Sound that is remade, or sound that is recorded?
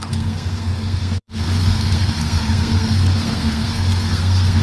remade